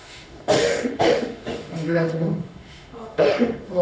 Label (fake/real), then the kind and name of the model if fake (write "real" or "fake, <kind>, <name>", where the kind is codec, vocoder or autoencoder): fake, autoencoder, DAC-VAE